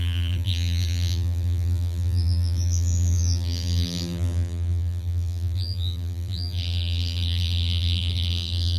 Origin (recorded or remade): remade